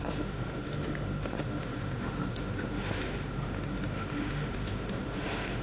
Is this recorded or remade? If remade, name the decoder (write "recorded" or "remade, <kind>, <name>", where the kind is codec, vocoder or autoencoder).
remade, autoencoder, DAC-VAE